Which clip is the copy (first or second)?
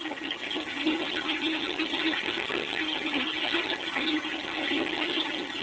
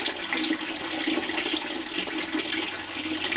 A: first